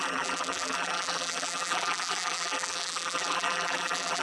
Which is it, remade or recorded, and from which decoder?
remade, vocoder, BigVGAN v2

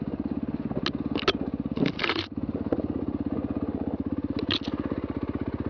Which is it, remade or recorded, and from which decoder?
recorded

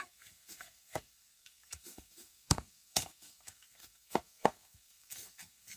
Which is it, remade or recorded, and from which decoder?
remade, codec, SNAC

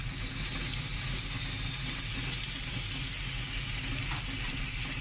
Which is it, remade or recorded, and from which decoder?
recorded